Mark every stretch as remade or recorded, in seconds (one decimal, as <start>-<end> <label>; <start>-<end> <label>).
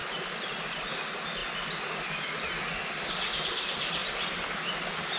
0.0-5.2 recorded